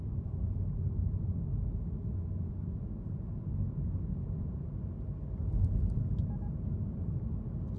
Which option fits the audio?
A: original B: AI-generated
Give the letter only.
A